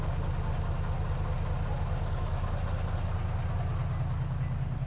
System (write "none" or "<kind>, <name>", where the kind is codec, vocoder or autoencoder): none